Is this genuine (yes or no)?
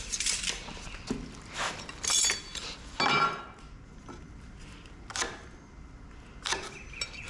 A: yes